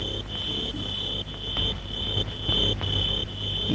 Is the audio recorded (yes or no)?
yes